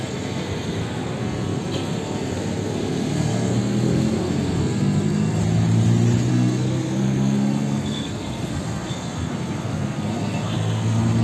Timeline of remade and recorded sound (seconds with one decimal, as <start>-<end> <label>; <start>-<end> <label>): 0.0-5.4 remade; 5.4-6.3 recorded; 6.3-11.2 remade